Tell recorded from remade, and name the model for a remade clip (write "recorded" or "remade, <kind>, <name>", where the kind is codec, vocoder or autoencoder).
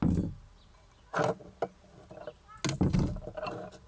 recorded